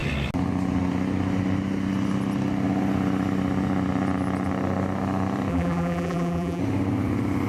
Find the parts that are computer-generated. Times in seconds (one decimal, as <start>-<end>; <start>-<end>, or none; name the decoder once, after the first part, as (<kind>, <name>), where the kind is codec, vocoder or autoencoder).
5.5-6.6 (vocoder, BigVGAN v2)